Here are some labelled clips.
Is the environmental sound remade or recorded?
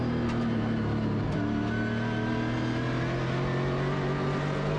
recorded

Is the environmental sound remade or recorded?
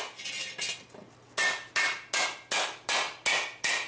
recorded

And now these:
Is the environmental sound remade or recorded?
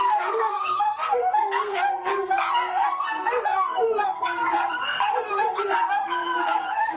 remade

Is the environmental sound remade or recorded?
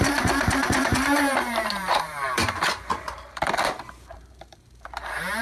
remade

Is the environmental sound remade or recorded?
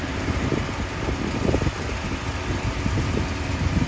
recorded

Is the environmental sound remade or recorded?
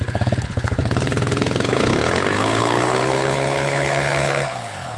remade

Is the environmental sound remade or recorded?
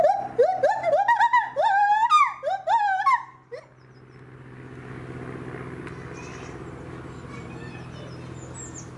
recorded